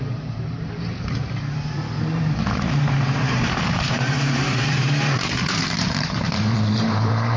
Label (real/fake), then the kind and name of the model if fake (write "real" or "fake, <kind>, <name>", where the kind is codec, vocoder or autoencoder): fake, vocoder, BigVGAN v2